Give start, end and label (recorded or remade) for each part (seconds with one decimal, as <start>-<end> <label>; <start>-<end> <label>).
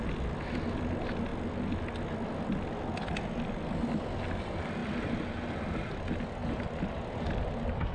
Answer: 0.0-7.9 recorded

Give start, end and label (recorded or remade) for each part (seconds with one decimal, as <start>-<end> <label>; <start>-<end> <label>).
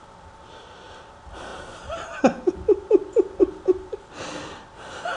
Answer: 0.0-5.2 recorded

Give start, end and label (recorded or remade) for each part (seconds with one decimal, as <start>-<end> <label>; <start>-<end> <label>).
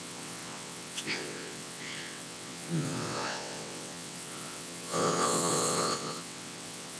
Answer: 0.0-7.0 remade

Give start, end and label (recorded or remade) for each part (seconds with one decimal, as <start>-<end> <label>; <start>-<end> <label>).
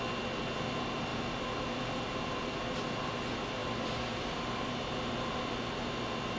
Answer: 0.0-1.1 recorded; 1.1-3.2 remade; 3.2-3.6 recorded; 3.6-4.7 remade; 4.7-6.4 recorded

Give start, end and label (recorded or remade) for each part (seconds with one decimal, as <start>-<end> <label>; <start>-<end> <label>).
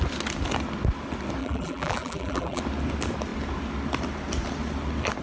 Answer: 0.0-1.4 recorded; 1.4-2.6 remade; 2.6-5.2 recorded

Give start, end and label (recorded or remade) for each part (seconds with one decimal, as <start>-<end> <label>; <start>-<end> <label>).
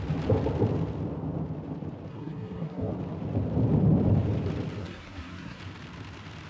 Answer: 0.0-2.1 recorded; 2.1-2.9 remade; 2.9-4.8 recorded; 4.8-5.6 remade; 5.6-6.5 recorded